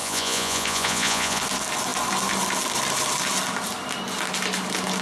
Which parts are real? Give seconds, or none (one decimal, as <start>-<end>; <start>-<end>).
1.4-5.0